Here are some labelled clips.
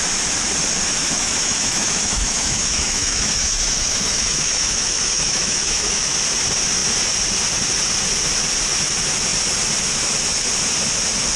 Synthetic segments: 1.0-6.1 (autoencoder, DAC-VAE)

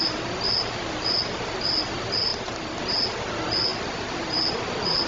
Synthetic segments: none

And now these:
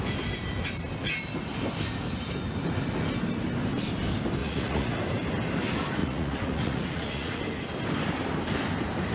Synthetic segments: 4.4-5.0 (vocoder, Vocos); 6.0-7.4

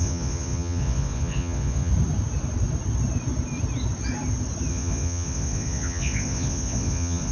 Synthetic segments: 0.0-1.9 (vocoder, Vocos); 4.7-7.3

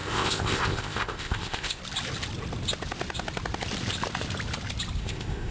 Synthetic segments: 0.0-1.8 (codec, ZipCodec); 5.0-5.5